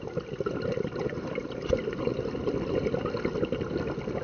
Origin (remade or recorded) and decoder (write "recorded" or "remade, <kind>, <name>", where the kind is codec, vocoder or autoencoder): recorded